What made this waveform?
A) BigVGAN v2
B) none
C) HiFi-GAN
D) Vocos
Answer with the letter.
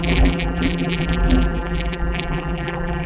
A